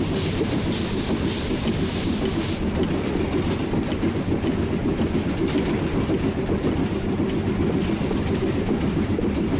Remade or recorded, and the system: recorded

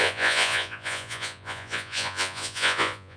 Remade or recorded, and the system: remade, vocoder, Vocos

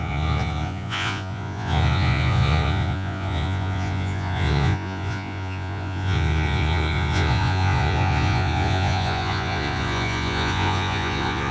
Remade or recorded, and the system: remade, vocoder, Vocos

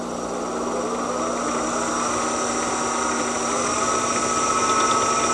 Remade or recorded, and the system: recorded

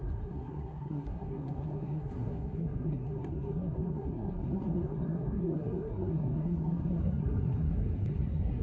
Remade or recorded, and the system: remade, codec, SNAC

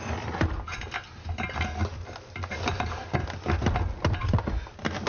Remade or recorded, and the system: recorded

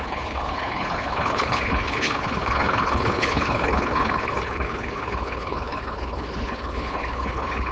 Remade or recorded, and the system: remade, codec, HILCodec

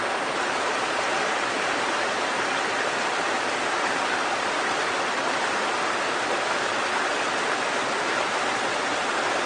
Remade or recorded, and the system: recorded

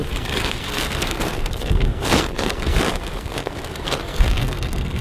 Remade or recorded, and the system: remade, codec, SNAC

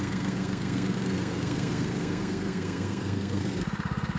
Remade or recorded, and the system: remade, codec, SNAC